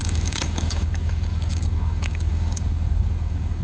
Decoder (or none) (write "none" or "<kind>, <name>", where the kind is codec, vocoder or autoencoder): codec, DAC